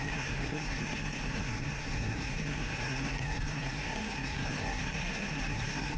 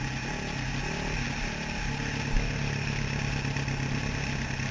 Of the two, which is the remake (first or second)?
first